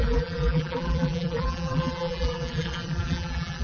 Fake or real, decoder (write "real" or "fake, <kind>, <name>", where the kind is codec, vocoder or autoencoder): fake, vocoder, BigVGAN v2